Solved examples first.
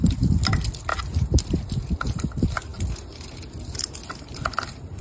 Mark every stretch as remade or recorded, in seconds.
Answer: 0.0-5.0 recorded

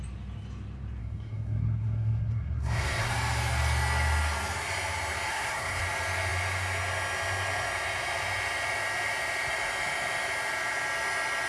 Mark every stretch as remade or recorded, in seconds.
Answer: 0.0-1.0 recorded; 1.0-3.1 remade; 3.1-5.3 recorded; 5.3-5.8 remade; 5.8-11.5 recorded

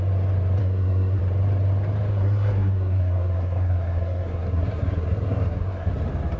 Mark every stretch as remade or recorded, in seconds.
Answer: 0.0-0.6 recorded; 0.6-1.2 remade; 1.2-2.1 recorded; 2.1-5.9 remade; 5.9-6.4 recorded

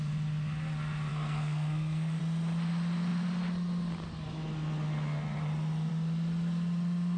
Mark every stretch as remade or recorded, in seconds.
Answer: 0.0-1.1 recorded; 1.1-2.2 remade; 2.2-7.2 recorded

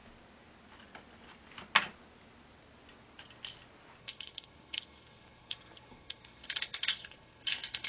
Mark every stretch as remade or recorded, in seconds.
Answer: 0.0-4.0 recorded; 4.0-7.9 remade